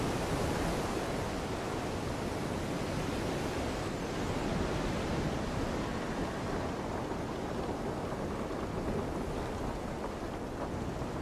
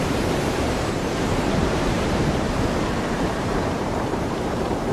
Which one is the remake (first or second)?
second